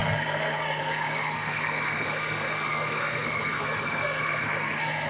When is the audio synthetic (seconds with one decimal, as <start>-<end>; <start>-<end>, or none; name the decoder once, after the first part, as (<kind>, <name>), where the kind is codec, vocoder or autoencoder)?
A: 0.0-5.1 (codec, SNAC)